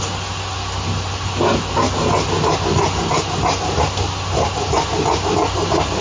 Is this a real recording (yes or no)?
yes